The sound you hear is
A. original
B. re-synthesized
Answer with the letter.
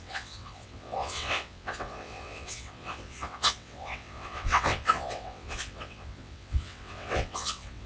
B